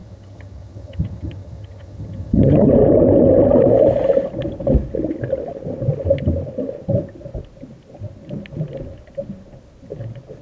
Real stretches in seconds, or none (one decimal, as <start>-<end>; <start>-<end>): 2.7-10.4

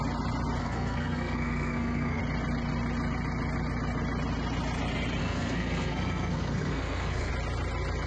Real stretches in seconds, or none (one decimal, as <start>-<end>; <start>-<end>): 0.0-0.6; 2.2-5.2; 7.3-8.1

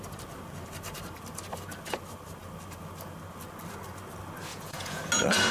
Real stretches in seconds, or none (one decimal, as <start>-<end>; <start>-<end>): 0.0-4.5; 5.0-5.5

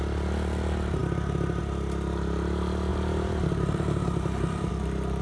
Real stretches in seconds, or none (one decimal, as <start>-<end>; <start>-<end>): 0.0-2.9; 4.7-5.2

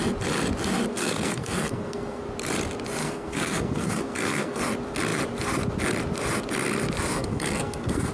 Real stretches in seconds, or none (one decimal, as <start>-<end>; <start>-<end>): 0.0-0.9; 2.2-3.0; 4.6-7.1